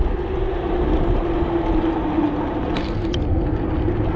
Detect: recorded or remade recorded